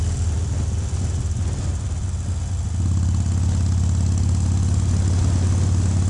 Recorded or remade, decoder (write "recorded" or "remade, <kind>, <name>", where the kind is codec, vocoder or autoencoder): recorded